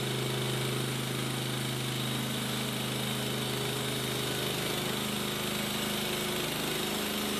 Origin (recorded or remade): recorded